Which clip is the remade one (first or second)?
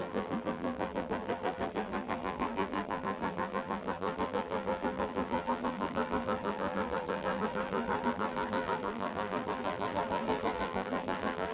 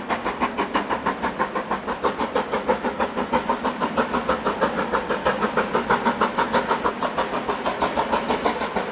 first